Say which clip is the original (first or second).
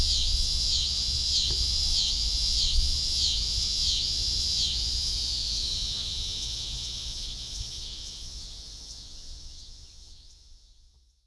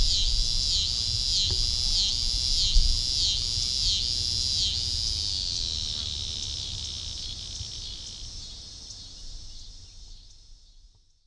second